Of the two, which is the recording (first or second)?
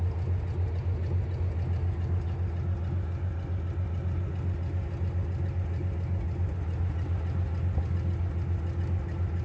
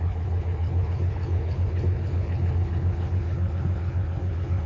first